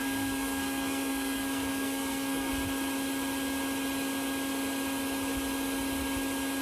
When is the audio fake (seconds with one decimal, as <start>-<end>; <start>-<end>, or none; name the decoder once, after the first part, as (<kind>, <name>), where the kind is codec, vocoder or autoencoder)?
0.0-2.5 (codec, SNAC)